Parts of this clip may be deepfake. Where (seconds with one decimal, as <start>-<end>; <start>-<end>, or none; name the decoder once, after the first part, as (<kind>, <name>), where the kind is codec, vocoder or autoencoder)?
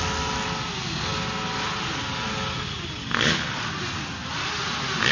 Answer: none